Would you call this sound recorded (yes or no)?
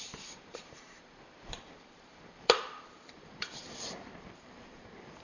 no